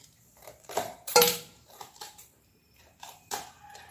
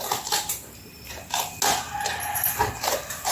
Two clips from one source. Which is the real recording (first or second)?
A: second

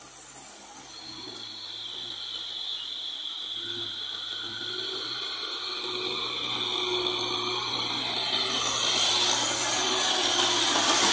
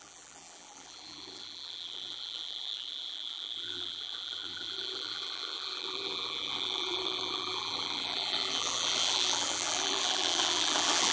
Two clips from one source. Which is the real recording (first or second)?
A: first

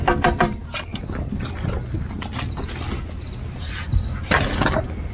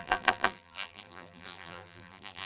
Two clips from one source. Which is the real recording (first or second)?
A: first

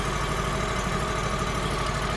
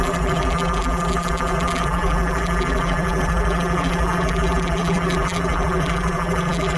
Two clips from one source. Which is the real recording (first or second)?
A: first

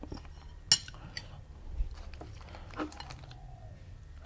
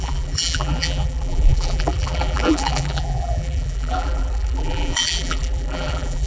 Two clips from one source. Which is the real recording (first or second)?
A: first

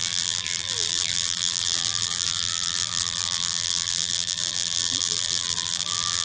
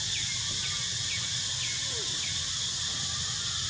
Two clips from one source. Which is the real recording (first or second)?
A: second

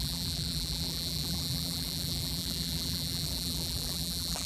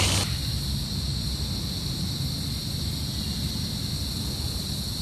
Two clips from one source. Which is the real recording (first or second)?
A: second